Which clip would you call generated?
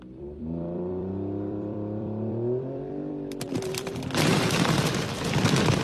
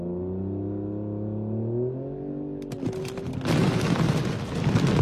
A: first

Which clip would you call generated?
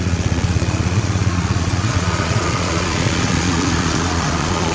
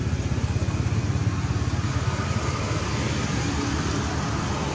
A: first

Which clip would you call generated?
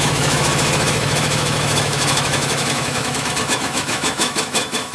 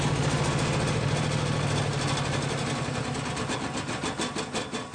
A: first